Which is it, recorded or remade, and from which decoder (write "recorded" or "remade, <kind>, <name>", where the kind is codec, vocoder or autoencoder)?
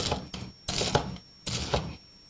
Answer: recorded